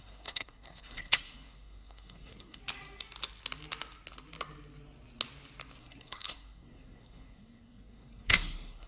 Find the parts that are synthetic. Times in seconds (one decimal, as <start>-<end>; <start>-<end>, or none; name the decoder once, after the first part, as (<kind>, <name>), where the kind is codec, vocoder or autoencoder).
0.0-2.6 (codec, SNAC); 5.8-8.9